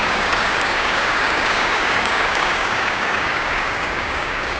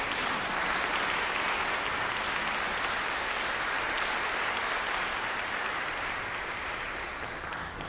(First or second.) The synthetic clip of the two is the first